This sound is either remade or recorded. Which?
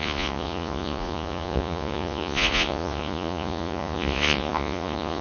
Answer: remade